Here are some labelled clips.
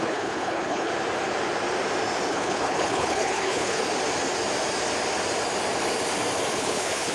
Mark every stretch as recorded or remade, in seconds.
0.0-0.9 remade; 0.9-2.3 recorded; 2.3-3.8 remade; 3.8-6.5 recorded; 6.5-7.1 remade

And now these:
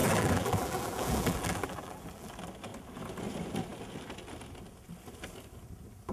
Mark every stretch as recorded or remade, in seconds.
0.0-2.3 remade; 2.3-6.1 recorded

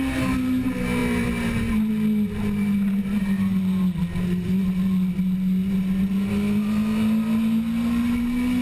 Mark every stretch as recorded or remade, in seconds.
0.0-8.6 recorded